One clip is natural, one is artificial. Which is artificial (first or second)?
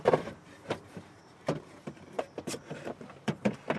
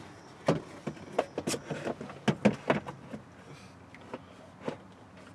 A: first